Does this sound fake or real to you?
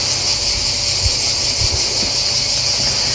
real